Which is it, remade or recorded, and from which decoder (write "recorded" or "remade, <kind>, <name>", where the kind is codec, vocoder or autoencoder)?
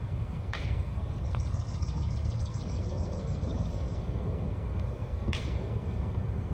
remade, codec, SNAC